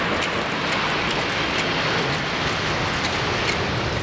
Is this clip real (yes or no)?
yes